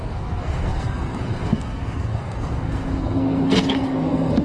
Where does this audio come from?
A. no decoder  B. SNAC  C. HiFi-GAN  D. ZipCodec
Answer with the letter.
B